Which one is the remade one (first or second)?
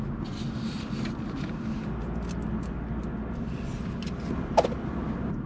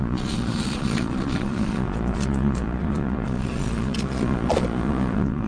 second